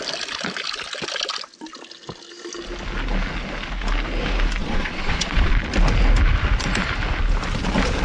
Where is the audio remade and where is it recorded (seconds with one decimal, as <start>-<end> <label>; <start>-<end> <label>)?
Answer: 0.0-4.6 recorded; 4.6-5.5 remade; 5.5-8.0 recorded